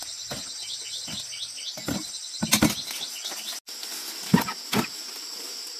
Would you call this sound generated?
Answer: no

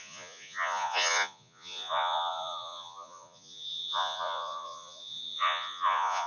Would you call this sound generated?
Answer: yes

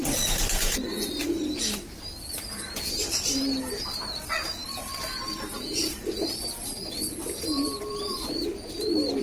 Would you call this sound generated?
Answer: yes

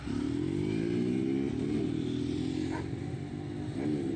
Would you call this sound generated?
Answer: no